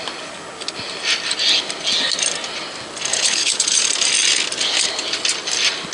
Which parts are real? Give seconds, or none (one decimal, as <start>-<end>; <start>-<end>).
0.0-3.1; 3.8-5.9